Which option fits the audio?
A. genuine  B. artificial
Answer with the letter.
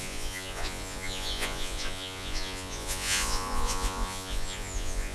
B